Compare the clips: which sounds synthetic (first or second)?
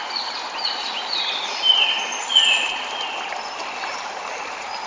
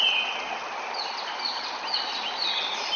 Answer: first